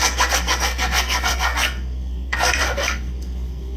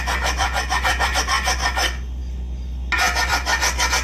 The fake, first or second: first